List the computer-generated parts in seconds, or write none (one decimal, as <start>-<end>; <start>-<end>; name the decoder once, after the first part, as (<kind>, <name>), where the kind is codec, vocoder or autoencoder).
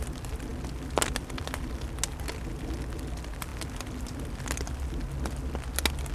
none